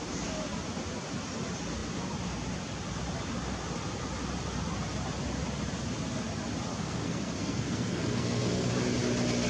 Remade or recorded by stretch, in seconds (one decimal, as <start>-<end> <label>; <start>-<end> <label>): 0.0-6.7 recorded; 6.7-8.7 remade; 8.7-9.5 recorded